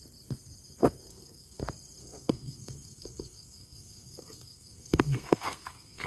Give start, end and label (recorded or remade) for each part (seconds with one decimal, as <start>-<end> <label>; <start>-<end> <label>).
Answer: 0.0-1.1 recorded; 1.1-1.6 remade; 1.6-2.0 recorded; 2.0-6.1 remade